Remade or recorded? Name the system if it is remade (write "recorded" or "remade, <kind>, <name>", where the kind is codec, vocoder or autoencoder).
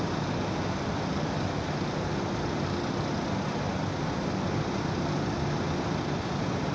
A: recorded